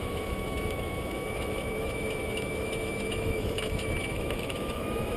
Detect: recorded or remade remade